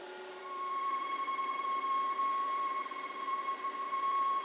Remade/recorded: remade